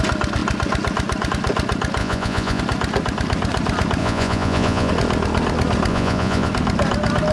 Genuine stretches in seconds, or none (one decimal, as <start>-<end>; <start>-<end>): 0.0-2.0; 2.6-4.0; 4.9-5.9; 6.5-7.3